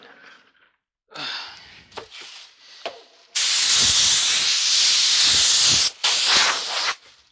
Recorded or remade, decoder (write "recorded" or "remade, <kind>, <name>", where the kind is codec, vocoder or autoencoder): recorded